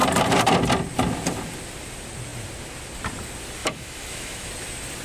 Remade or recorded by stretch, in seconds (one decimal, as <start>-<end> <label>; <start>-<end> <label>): 0.0-3.6 recorded; 3.6-4.5 remade; 4.5-5.0 recorded